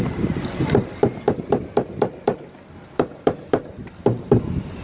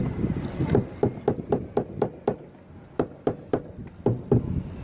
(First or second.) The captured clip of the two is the second